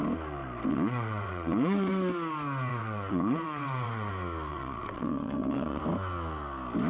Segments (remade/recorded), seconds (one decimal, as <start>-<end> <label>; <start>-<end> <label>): 0.0-0.7 recorded; 0.7-1.9 remade; 1.9-2.7 recorded; 2.7-4.1 remade; 4.1-4.5 recorded; 4.5-5.8 remade; 5.8-6.9 recorded